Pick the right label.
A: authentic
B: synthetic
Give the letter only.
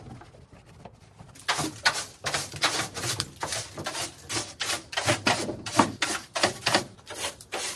A